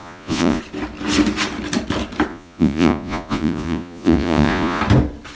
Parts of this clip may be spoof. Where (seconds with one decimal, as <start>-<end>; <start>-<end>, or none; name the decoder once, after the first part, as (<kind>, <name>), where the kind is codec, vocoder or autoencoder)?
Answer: 0.0-0.6 (vocoder, Vocos); 2.3-4.8